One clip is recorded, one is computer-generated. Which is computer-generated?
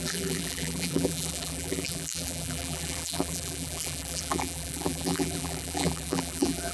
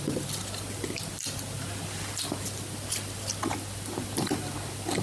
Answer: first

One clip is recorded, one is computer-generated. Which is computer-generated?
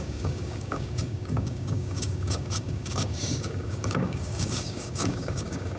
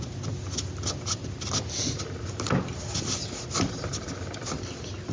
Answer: first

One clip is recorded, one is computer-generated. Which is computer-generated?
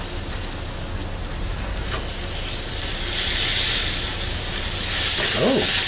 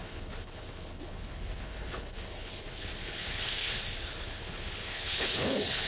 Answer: second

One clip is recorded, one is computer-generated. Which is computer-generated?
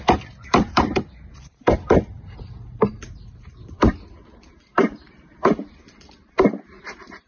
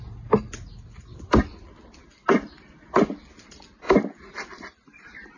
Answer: first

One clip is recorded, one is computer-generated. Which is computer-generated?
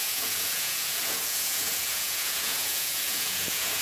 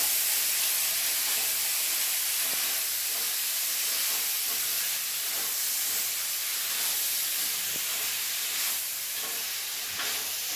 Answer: first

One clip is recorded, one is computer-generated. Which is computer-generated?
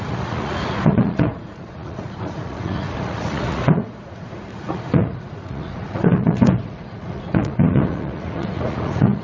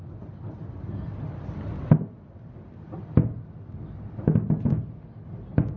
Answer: first